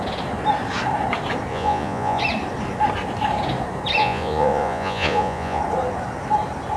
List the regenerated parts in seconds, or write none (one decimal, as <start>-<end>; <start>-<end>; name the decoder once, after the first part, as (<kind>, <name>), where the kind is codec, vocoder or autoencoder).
1.5-2.2 (vocoder, Vocos); 4.0-5.6